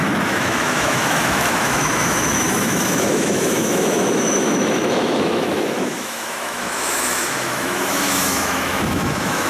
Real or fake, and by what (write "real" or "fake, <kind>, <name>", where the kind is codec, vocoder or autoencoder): fake, autoencoder, DAC-VAE